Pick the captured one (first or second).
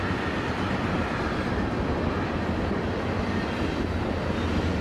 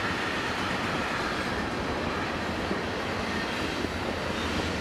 first